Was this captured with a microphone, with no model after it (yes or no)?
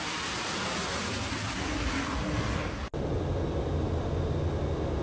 yes